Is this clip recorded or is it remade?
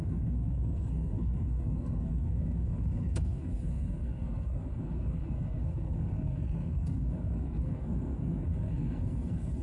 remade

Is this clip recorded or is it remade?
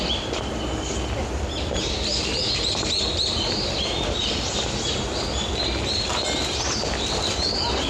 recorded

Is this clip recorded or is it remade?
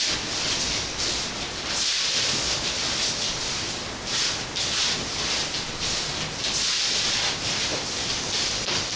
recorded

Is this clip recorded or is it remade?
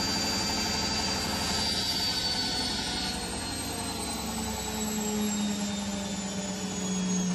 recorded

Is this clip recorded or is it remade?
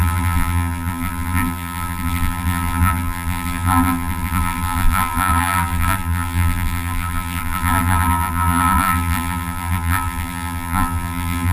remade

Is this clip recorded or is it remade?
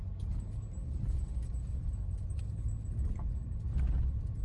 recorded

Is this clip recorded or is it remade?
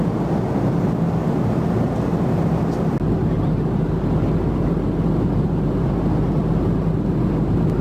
recorded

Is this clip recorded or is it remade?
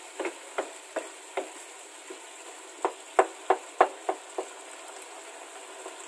recorded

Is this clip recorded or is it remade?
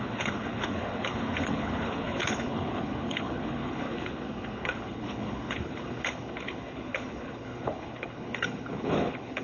remade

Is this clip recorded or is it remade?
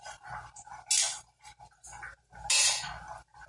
recorded